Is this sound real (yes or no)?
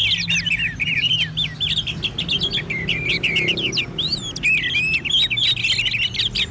yes